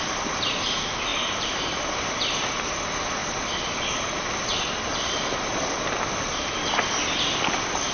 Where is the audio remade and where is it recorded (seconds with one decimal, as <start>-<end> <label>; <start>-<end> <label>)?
0.0-7.9 recorded